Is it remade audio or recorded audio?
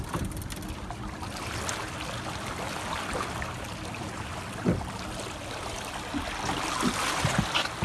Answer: recorded